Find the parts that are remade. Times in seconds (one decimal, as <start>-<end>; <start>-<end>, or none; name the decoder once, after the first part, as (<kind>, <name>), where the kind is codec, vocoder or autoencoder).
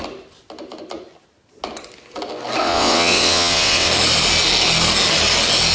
2.6-3.9 (vocoder, WaveNeXt)